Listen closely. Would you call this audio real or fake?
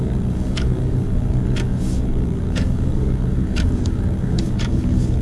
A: fake